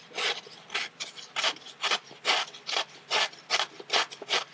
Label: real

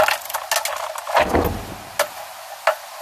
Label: real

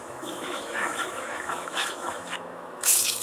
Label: fake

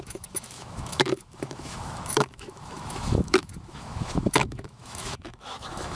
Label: fake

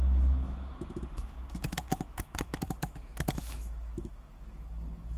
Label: fake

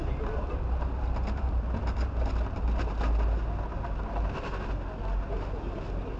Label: real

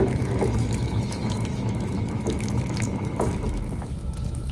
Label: fake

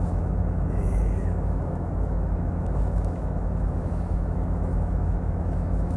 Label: fake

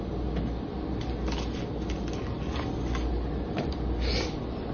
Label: real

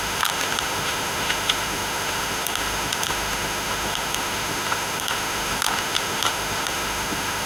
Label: fake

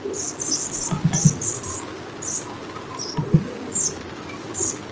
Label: real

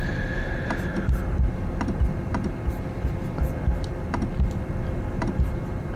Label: real